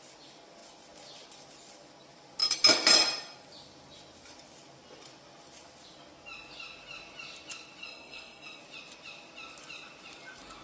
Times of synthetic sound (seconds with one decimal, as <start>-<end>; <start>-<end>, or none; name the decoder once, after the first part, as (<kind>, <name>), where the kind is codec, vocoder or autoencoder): 7.8-8.6 (codec, SNAC)